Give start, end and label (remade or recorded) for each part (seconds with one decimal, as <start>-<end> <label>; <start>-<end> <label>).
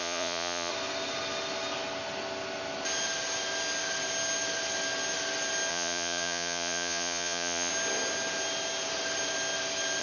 0.0-0.7 remade; 0.7-5.7 recorded; 5.7-7.7 remade; 7.7-10.0 recorded